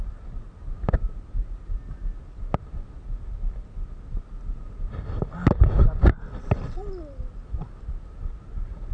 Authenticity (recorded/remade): recorded